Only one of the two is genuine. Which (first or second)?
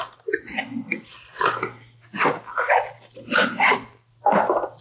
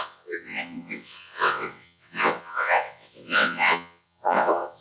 first